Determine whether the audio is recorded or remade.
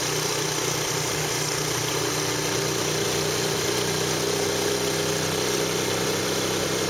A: recorded